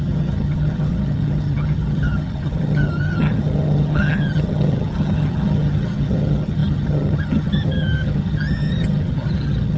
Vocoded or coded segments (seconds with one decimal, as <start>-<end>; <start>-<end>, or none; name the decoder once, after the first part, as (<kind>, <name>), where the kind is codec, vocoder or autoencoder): 0.0-9.8 (vocoder, HiFi-GAN)